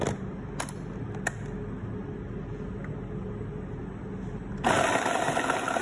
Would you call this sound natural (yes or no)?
yes